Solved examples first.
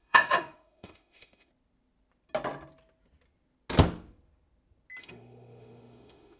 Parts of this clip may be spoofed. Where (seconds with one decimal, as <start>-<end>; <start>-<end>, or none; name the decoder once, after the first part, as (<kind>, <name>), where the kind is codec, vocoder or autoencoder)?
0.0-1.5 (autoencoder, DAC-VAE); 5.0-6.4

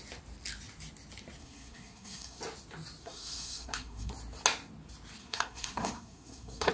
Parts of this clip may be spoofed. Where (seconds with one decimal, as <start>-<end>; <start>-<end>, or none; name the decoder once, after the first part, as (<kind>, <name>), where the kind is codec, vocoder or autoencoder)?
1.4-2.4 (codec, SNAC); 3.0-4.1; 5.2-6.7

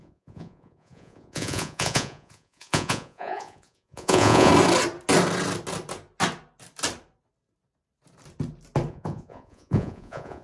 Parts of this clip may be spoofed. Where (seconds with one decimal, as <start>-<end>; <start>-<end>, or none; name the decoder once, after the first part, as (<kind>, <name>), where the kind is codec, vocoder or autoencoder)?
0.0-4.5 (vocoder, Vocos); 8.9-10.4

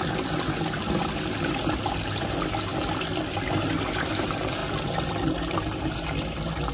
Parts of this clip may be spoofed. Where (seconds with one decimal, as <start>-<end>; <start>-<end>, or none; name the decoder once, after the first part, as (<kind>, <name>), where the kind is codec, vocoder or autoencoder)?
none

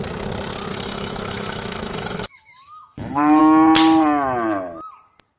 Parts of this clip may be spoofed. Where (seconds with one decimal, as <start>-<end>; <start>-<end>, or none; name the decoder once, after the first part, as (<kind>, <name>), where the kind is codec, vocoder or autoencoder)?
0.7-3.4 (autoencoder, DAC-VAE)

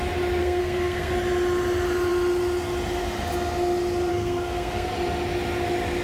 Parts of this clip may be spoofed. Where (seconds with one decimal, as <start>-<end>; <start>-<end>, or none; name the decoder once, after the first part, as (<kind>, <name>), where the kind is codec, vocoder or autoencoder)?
0.4-1.1 (codec, SNAC); 4.1-4.9